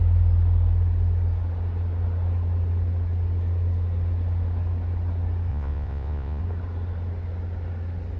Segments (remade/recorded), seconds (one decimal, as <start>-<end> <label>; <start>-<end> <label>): 0.0-5.5 recorded; 5.5-6.4 remade; 6.4-8.2 recorded